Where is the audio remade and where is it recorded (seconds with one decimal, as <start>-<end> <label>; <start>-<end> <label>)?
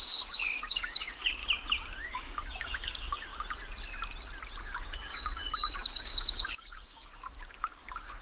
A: 0.0-1.4 remade; 1.4-2.0 recorded; 2.0-3.3 remade; 3.3-4.6 recorded; 4.6-8.2 remade